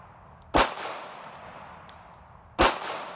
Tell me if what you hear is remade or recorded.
recorded